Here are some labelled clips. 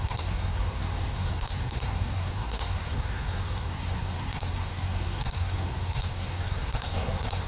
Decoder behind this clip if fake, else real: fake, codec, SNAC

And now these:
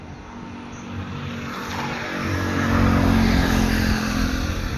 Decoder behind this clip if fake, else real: real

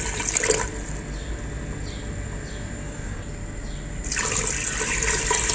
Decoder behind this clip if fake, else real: real